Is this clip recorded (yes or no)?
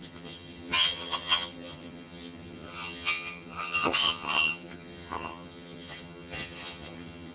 no